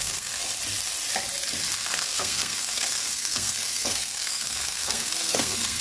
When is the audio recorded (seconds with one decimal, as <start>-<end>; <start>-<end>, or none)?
0.4-1.7